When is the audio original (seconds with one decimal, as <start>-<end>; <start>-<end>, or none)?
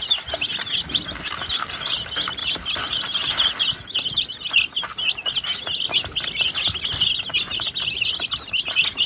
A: 0.0-2.4; 4.4-7.5